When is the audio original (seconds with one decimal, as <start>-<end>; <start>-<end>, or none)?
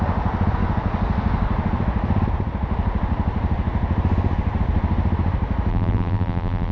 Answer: 0.0-5.7